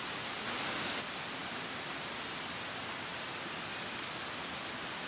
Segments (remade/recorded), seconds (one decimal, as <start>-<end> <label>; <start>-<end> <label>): 0.0-5.1 recorded